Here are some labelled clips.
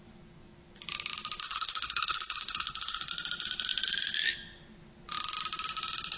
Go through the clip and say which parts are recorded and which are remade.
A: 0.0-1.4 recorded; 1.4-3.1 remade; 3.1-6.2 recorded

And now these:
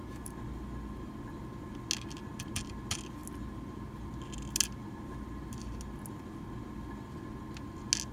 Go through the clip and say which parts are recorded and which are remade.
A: 0.0-8.1 recorded

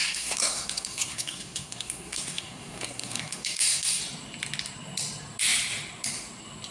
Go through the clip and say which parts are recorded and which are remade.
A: 0.0-4.0 remade; 4.0-6.7 recorded

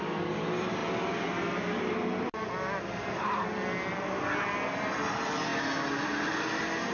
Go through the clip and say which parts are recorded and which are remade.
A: 0.0-6.9 recorded

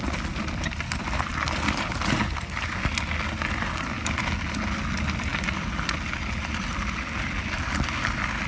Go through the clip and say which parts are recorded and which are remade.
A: 0.0-8.5 recorded